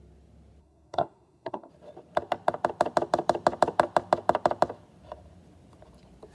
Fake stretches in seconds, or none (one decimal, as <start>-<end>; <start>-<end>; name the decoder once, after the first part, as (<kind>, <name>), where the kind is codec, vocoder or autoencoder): 0.6-1.7 (codec, SNAC)